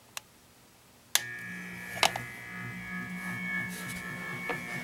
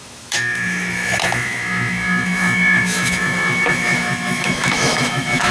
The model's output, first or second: second